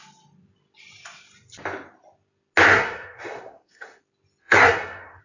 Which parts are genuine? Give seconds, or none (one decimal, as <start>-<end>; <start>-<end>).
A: 0.0-2.7; 4.0-4.4